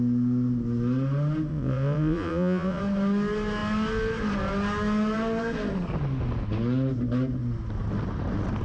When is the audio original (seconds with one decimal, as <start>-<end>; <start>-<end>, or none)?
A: 0.0-1.5; 2.8-8.6